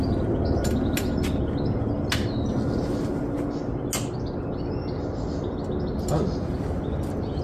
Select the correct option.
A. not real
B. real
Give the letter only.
B